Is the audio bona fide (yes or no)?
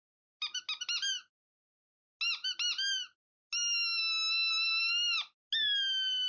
yes